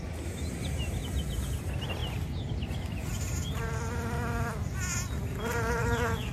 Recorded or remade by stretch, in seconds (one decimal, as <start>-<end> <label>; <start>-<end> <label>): 0.0-6.3 recorded